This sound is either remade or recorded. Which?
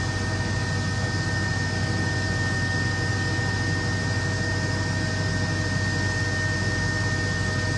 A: recorded